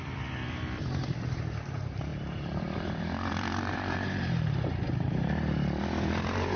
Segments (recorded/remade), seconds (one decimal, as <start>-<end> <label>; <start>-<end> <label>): 0.0-6.6 remade